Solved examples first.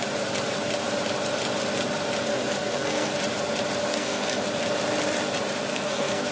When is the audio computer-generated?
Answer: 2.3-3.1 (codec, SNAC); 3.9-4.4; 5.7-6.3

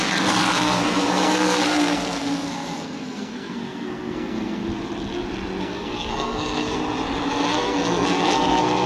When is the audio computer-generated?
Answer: 0.0-4.6 (codec, SNAC); 5.6-6.8; 7.3-8.9

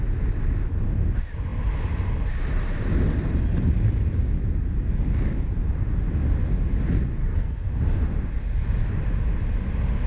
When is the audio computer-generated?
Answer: 7.2-7.8 (codec, SNAC)

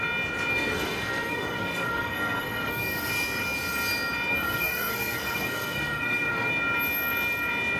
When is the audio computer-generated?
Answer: 0.5-3.1 (codec, SNAC); 4.3-6.5